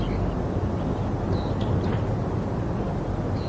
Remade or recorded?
recorded